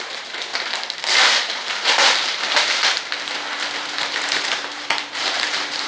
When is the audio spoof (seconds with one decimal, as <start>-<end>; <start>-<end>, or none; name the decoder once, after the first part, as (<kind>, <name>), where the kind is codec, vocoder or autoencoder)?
0.0-0.5 (vocoder, BigVGAN v2); 4.0-5.9